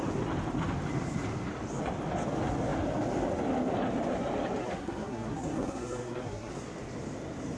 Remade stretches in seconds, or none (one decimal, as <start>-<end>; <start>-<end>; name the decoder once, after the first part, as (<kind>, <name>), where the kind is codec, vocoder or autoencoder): 4.6-6.5 (codec, SNAC)